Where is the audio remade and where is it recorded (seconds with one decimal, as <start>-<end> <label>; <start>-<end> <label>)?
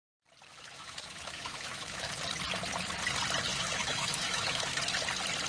0.0-0.5 recorded; 0.5-2.1 remade; 2.1-3.5 recorded; 3.5-4.8 remade; 4.8-5.5 recorded